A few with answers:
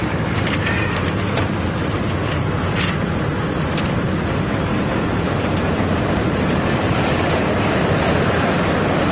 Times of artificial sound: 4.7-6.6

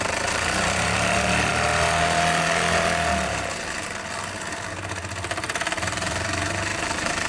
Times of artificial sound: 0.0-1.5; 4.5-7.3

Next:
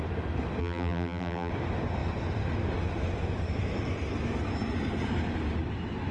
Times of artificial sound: 0.6-1.5